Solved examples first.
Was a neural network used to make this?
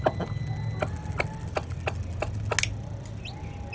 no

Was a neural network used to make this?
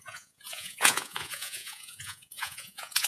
yes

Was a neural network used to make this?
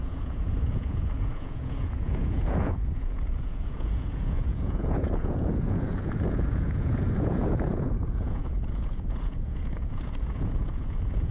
yes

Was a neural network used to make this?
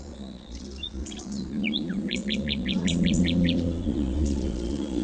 yes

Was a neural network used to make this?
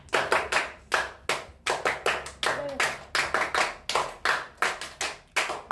no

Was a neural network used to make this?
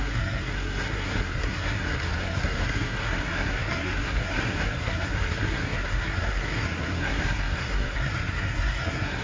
yes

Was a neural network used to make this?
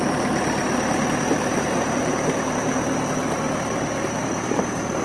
yes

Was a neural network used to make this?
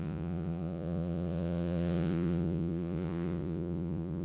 yes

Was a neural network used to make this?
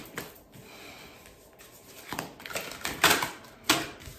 no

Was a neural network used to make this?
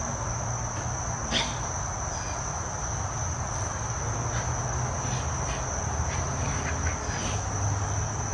no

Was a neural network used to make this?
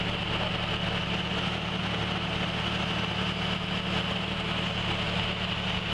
no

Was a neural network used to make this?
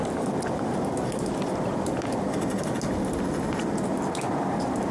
no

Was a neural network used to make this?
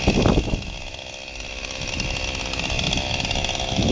no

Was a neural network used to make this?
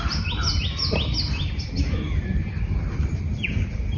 no